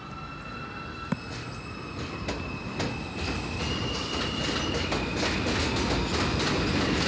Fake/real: real